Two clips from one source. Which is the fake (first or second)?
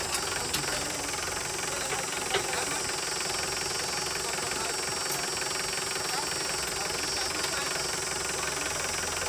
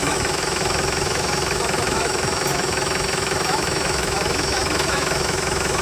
second